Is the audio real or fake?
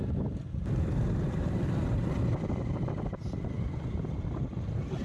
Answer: real